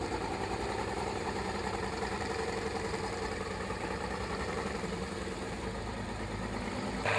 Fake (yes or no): yes